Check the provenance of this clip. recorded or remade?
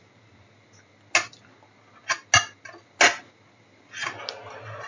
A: recorded